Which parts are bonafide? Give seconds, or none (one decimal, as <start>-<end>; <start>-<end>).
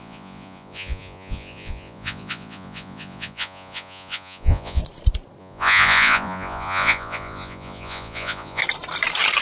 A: 4.8-5.4; 8.6-9.4